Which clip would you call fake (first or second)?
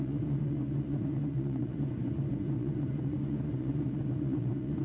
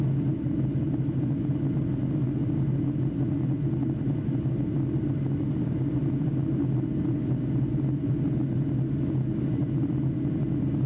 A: first